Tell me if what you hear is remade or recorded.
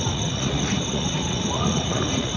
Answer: remade